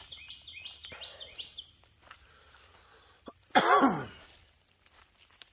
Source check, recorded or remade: recorded